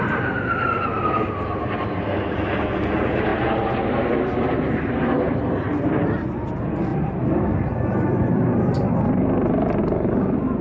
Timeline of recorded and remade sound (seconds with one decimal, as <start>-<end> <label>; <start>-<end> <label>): 0.0-6.9 recorded; 6.9-9.8 remade; 9.8-10.6 recorded